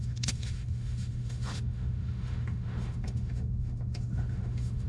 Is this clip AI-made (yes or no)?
yes